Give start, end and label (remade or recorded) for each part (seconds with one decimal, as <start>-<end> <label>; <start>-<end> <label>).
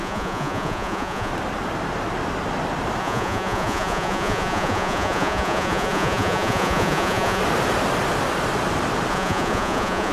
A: 0.0-1.3 remade; 1.3-3.0 recorded; 3.0-7.4 remade; 7.4-9.1 recorded; 9.1-10.1 remade